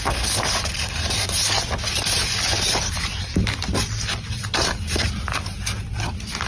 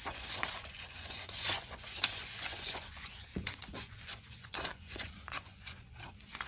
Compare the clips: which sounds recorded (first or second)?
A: first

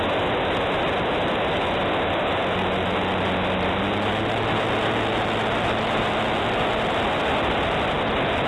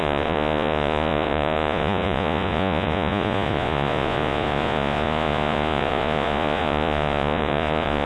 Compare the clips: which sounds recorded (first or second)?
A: first